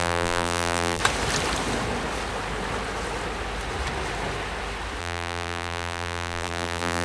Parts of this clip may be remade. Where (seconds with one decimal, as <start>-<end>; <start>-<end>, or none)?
0.0-1.0; 5.0-7.0